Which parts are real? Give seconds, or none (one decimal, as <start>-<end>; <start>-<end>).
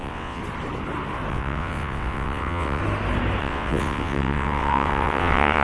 0.4-1.3; 2.8-3.4